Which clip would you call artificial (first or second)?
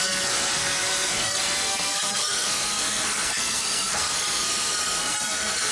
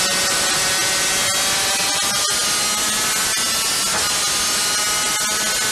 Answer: first